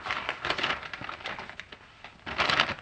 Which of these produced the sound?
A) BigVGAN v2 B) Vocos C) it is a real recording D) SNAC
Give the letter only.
C